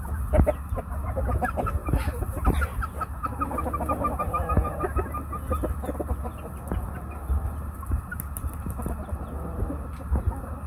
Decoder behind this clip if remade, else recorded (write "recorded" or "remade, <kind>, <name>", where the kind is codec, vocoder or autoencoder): recorded